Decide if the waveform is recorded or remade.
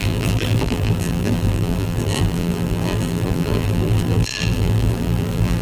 remade